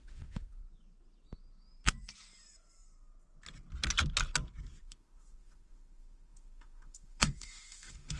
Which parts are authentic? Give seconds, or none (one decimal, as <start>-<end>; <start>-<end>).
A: 0.6-4.8